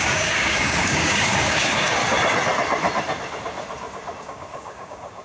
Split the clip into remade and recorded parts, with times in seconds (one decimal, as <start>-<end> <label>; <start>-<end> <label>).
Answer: 0.0-2.0 remade; 2.0-4.2 recorded; 4.2-5.2 remade